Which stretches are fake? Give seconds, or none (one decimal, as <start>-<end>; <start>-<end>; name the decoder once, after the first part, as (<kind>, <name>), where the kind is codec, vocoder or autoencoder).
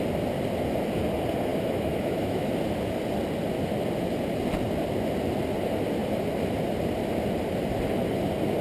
1.5-2.5 (autoencoder, DAC-VAE)